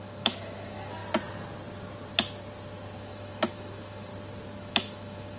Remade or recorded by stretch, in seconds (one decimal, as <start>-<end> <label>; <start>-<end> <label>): 0.0-1.0 remade; 1.0-3.0 recorded; 3.0-4.1 remade; 4.1-4.6 recorded; 4.6-5.4 remade